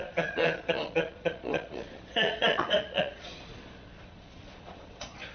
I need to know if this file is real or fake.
fake